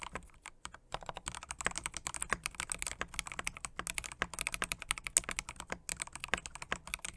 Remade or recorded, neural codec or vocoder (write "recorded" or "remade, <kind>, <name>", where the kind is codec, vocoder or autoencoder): recorded